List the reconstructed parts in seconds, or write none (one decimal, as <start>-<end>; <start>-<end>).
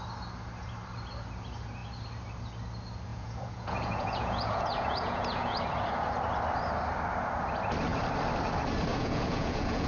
3.1-5.6; 8.9-9.9